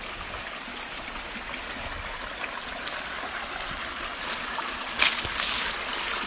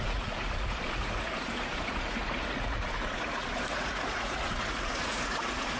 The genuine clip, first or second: first